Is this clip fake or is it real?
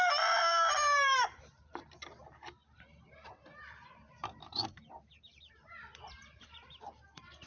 fake